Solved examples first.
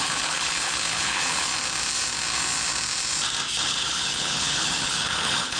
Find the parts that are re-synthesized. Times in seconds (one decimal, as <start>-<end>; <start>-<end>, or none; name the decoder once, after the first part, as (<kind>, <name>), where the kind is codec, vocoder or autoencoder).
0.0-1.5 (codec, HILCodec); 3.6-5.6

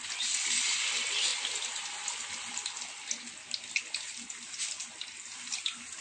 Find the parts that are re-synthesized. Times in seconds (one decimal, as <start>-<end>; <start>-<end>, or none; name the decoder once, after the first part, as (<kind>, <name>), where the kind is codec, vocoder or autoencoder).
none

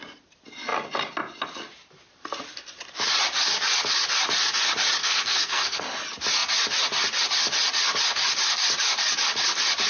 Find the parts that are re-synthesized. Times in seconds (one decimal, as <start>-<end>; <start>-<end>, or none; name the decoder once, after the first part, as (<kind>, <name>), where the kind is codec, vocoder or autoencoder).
5.0-5.8 (codec, SNAC)